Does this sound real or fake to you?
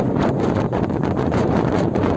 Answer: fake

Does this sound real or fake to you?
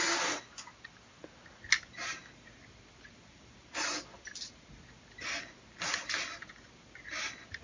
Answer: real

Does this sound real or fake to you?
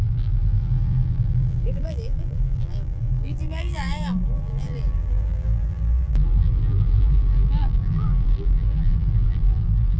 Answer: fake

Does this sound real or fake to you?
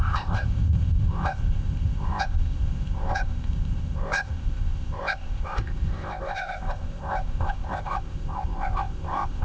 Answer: fake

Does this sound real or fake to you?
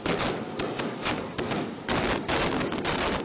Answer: real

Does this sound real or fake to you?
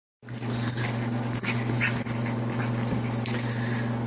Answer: real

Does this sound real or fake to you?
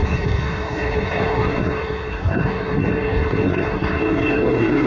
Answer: fake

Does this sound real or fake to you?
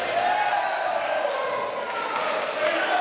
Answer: real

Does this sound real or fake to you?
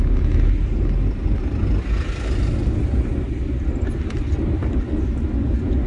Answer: real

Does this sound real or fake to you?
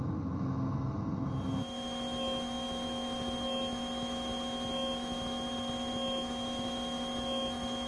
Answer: fake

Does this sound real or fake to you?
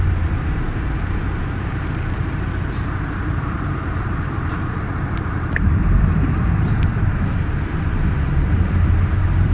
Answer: fake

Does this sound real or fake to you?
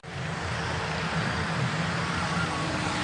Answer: real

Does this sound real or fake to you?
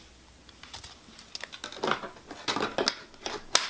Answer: real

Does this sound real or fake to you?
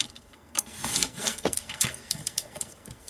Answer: fake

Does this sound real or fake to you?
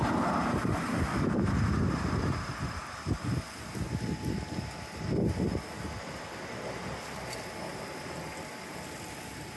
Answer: real